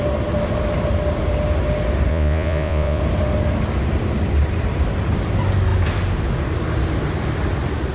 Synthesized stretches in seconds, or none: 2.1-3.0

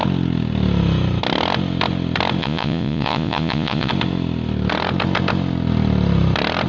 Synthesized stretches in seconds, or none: 2.4-3.9